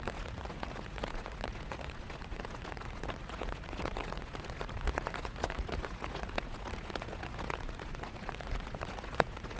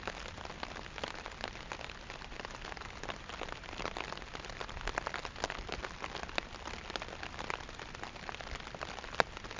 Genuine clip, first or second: second